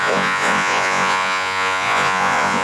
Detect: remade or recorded remade